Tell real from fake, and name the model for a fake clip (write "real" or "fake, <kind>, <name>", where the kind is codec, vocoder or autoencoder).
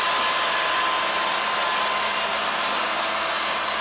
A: real